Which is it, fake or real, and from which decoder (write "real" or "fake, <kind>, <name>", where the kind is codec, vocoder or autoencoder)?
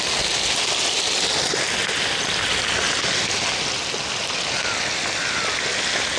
real